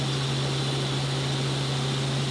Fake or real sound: real